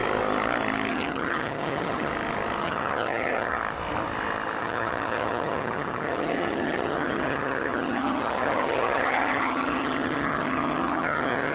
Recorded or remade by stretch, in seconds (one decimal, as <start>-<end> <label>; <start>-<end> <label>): 0.0-0.9 recorded; 0.9-2.1 remade; 2.1-2.6 recorded; 2.6-3.6 remade; 3.6-4.6 recorded; 4.6-11.5 remade